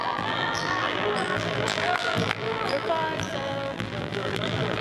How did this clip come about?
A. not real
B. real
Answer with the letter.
A